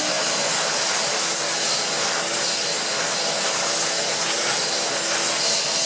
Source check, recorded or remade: recorded